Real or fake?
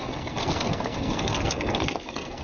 fake